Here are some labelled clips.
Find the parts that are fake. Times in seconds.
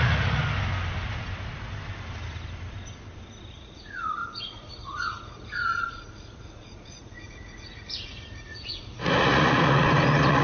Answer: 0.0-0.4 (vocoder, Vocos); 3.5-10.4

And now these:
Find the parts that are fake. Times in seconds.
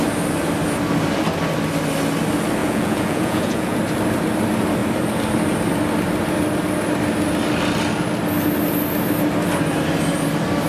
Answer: 2.6-3.8 (vocoder, Vocos)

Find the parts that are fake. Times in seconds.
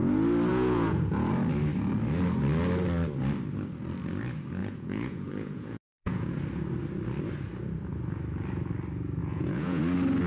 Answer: 0.5-1.3 (vocoder, Vocos); 4.6-6.3; 9.2-9.8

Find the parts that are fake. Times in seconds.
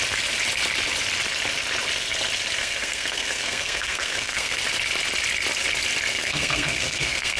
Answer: 2.6-4.6 (codec, SNAC); 6.1-7.4